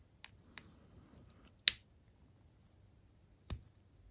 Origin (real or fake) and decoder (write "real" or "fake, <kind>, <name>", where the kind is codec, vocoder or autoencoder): real